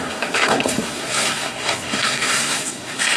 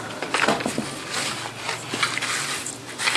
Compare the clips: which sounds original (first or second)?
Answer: second